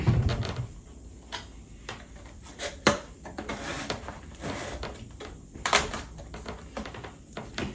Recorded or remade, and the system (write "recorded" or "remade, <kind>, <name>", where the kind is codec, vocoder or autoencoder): remade, vocoder, BigVGAN v2